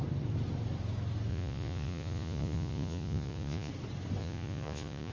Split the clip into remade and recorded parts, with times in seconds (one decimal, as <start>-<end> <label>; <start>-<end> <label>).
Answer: 0.0-1.3 recorded; 1.3-3.7 remade; 3.7-4.2 recorded; 4.2-5.1 remade

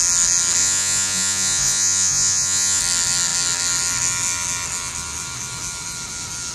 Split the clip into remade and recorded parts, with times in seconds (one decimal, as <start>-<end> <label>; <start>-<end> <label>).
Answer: 0.0-0.6 recorded; 0.6-2.8 remade; 2.8-6.5 recorded

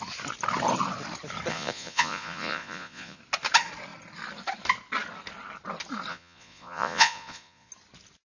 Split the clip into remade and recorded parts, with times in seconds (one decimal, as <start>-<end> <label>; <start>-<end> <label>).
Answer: 0.0-1.5 recorded; 1.5-3.2 remade; 3.2-6.1 recorded; 6.1-7.7 remade; 7.7-8.3 recorded

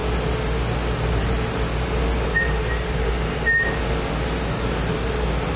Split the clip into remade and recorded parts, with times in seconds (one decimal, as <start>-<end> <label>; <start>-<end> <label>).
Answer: 0.0-5.6 recorded

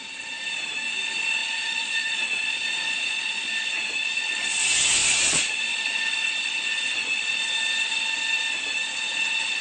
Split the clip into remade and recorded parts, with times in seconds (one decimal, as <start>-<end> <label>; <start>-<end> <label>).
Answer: 0.0-1.4 recorded; 1.4-3.5 remade; 3.5-5.0 recorded; 5.0-5.6 remade; 5.6-9.6 recorded